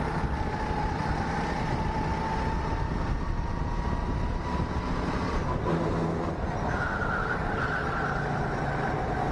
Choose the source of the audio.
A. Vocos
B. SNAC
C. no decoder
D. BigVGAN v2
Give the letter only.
C